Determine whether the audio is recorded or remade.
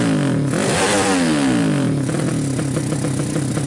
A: recorded